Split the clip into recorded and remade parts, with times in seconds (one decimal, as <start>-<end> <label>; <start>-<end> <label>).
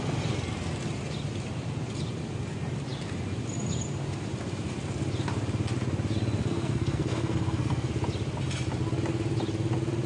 0.0-6.4 recorded; 6.4-7.9 remade; 7.9-10.1 recorded